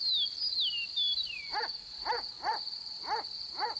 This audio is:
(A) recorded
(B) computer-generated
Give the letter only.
A